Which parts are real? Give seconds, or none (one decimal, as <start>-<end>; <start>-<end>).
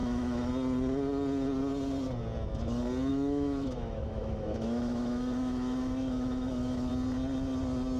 0.5-3.1; 6.9-8.0